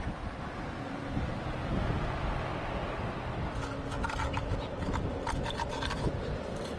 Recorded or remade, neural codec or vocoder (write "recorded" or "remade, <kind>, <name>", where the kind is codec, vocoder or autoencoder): recorded